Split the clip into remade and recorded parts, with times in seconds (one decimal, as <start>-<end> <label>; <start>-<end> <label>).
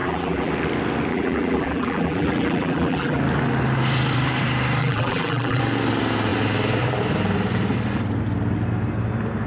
0.0-0.5 remade; 0.5-1.1 recorded; 1.1-3.2 remade; 3.2-4.8 recorded; 4.8-5.6 remade; 5.6-9.5 recorded